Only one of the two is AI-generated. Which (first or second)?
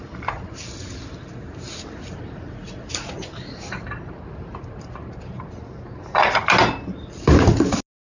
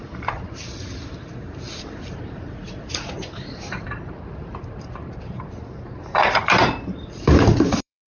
second